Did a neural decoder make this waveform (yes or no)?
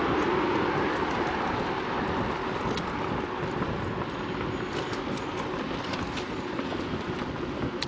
no